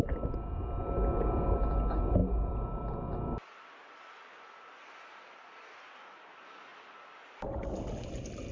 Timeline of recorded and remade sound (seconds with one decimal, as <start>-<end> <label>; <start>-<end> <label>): 0.0-8.5 recorded